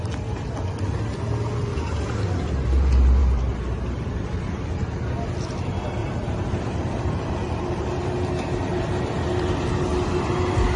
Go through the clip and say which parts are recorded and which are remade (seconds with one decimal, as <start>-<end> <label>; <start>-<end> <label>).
0.0-3.2 recorded; 3.2-4.7 remade; 4.7-6.0 recorded; 6.0-8.1 remade; 8.1-10.8 recorded